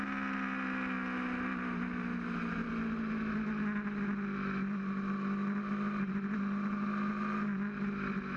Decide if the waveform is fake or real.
real